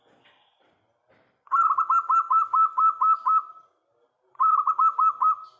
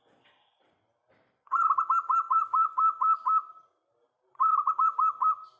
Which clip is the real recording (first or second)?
first